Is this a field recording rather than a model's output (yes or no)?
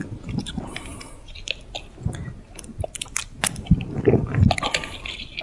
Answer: yes